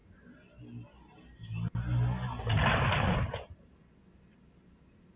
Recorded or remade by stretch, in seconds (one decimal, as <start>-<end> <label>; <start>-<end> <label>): 0.0-5.2 recorded